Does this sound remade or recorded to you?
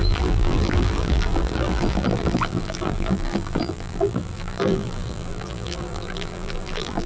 remade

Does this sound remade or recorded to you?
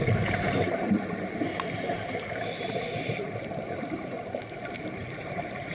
remade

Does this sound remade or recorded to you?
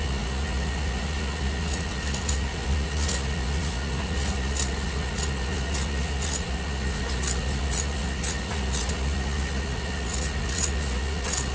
remade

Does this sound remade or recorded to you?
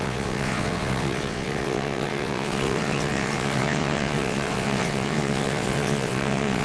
remade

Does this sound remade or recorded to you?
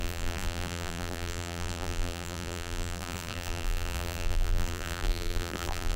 remade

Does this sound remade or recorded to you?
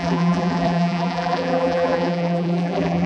remade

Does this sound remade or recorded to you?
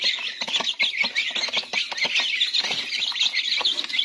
recorded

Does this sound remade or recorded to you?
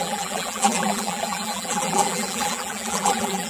remade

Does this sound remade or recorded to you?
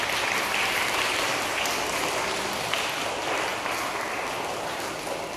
recorded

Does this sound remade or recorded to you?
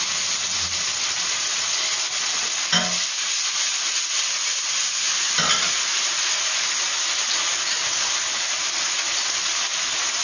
recorded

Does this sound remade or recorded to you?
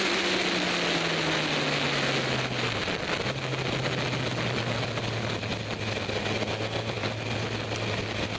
recorded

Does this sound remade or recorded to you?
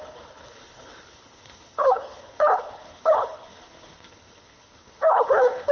remade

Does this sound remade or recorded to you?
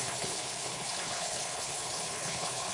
remade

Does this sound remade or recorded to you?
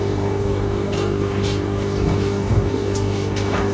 remade